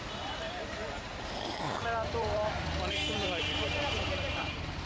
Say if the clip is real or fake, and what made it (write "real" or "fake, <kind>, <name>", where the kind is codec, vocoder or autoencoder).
fake, vocoder, BigVGAN v2